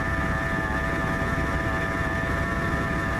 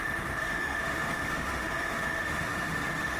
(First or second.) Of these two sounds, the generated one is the second